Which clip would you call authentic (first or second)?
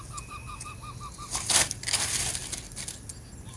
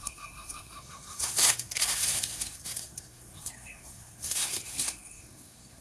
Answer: first